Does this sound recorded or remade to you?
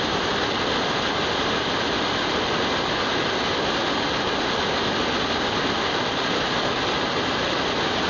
recorded